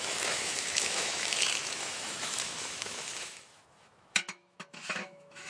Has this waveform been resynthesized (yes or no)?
yes